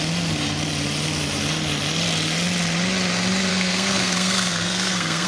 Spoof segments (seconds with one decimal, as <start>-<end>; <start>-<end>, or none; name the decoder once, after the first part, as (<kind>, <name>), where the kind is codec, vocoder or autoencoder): 3.5-5.3 (codec, SNAC)